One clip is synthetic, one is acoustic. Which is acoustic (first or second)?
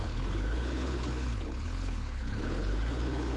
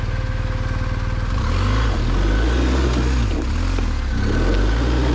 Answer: second